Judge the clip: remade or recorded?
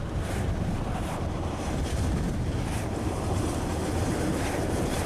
remade